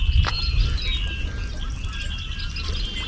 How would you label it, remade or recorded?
recorded